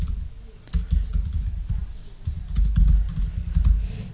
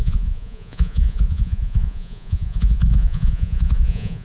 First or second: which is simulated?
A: second